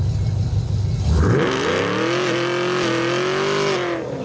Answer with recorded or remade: recorded